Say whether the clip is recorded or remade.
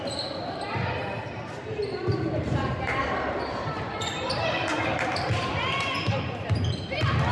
remade